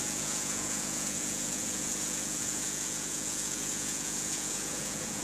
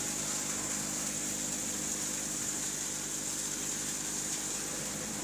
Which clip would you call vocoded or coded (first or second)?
first